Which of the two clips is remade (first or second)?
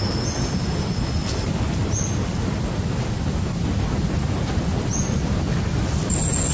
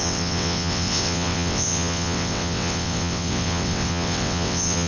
second